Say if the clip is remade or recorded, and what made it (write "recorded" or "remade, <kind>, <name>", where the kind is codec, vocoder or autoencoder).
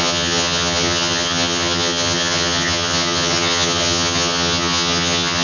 remade, vocoder, HiFi-GAN